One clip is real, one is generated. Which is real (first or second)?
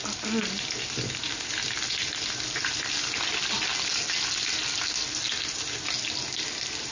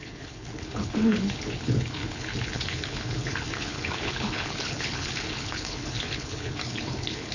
first